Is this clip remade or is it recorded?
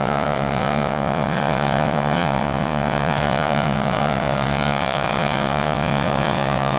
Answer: remade